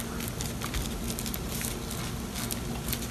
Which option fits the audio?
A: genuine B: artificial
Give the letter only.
A